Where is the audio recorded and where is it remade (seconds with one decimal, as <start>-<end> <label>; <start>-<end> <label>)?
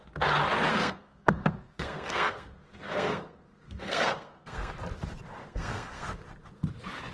0.0-0.7 recorded; 0.7-4.7 remade; 4.7-5.4 recorded; 5.4-6.1 remade; 6.1-7.1 recorded